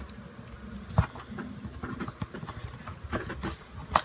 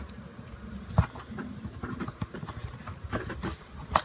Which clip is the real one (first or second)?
first